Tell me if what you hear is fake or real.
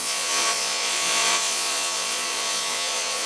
fake